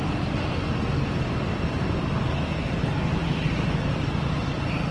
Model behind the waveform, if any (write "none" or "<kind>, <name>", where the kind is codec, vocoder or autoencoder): none